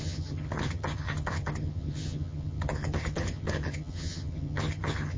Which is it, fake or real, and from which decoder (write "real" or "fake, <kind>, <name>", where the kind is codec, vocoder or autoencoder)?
fake, vocoder, HiFi-GAN